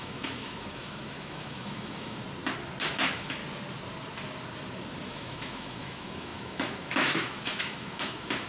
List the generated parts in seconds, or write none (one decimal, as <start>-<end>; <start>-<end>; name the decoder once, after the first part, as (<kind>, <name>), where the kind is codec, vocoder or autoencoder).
0.0-2.2 (autoencoder, DAC-VAE); 2.9-3.4; 5.1-8.5

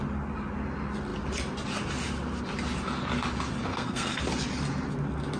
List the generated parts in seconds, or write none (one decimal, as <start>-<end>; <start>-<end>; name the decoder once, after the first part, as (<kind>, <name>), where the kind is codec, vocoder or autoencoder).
3.7-4.2 (codec, SNAC)

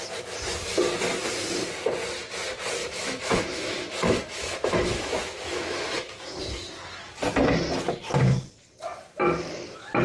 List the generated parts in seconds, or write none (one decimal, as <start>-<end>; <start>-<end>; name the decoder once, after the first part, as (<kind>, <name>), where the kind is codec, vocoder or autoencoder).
2.8-6.4 (autoencoder, DAC-VAE)

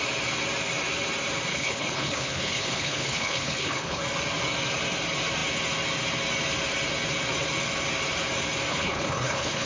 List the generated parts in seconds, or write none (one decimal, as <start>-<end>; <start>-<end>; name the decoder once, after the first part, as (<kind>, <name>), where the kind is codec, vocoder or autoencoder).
1.5-4.0 (codec, HILCodec); 8.7-9.7

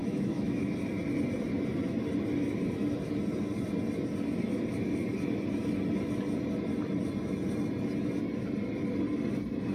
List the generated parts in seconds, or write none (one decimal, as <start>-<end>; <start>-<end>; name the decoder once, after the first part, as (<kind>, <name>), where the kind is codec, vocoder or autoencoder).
0.0-0.7 (autoencoder, DAC-VAE)

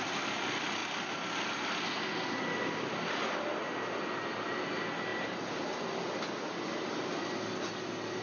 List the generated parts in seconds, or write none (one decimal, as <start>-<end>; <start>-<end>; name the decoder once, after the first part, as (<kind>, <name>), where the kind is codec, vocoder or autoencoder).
none

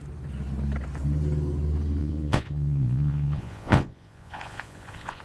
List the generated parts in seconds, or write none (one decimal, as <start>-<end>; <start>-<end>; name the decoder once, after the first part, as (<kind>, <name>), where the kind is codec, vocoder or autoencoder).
2.0-5.2 (vocoder, Vocos)

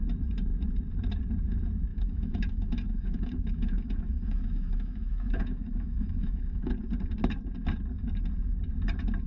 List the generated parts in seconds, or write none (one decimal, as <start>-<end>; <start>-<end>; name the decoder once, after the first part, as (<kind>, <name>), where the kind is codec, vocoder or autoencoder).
1.9-6.7 (autoencoder, DAC-VAE)